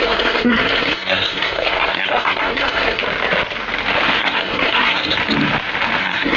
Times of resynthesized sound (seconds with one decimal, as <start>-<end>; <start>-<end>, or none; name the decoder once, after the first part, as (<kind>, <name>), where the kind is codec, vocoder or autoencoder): 0.0-3.0 (codec, SNAC); 4.2-5.2; 6.0-6.4